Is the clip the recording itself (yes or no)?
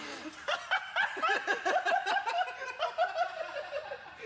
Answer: yes